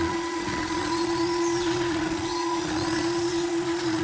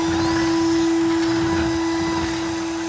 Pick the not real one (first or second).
first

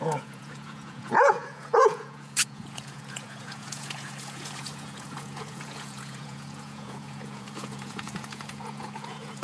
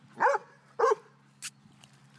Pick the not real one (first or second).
first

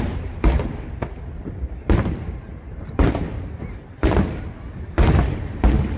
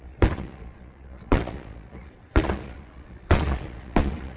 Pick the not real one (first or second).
second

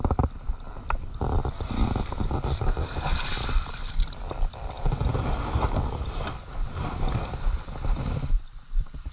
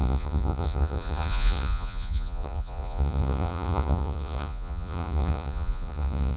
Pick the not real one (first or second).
second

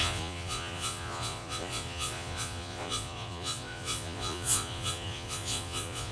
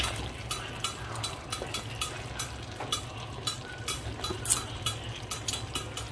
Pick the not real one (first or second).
first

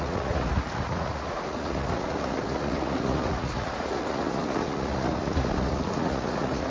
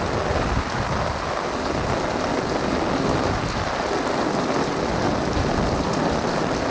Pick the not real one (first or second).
first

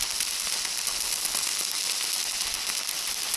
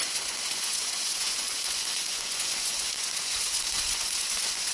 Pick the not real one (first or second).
second